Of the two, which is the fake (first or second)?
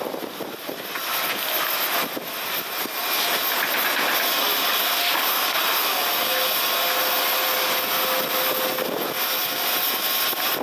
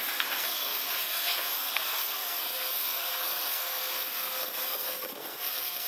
second